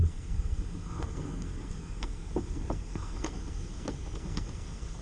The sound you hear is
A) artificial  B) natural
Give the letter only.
A